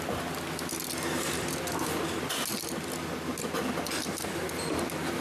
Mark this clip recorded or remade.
recorded